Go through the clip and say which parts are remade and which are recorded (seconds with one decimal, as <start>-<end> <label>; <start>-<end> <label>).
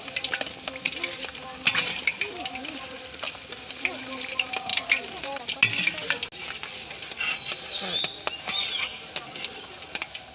0.0-4.7 recorded; 4.7-5.4 remade; 5.4-10.3 recorded